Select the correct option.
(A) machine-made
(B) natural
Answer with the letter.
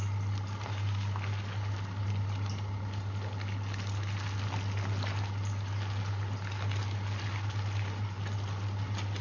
B